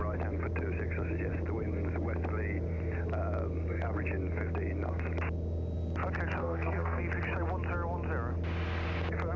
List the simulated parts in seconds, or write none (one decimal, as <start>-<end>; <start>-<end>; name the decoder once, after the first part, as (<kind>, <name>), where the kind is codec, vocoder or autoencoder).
6.4-7.0 (codec, SNAC)